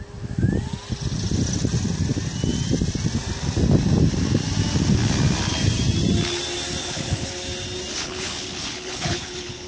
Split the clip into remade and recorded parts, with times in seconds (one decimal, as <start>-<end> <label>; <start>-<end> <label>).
0.0-6.8 recorded; 6.8-7.3 remade; 7.3-7.9 recorded; 7.9-9.7 remade